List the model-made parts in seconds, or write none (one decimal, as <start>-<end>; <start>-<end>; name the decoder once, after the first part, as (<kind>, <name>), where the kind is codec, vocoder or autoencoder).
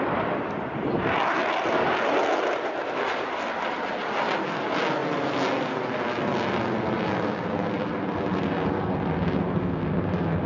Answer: none